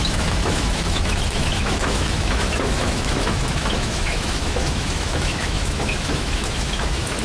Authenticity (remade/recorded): remade